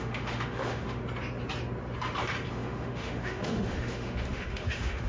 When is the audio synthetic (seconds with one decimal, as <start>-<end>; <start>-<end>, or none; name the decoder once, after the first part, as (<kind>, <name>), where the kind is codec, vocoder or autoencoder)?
0.0-1.0 (autoencoder, DAC-VAE); 2.5-5.1